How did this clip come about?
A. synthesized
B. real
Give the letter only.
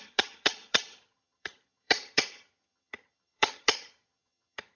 A